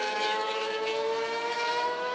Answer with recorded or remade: remade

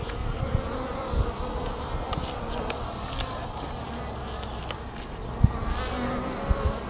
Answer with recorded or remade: recorded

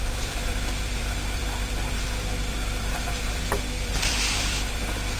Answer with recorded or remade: remade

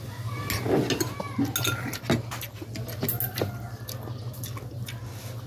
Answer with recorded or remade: recorded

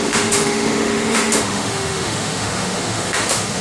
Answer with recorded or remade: remade